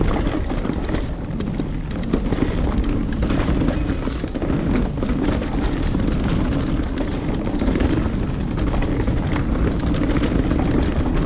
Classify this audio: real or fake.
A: real